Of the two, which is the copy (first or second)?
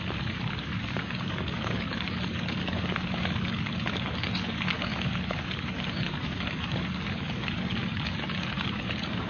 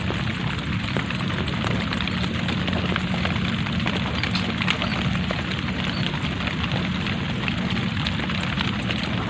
first